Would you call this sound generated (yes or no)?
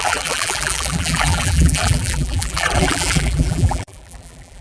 yes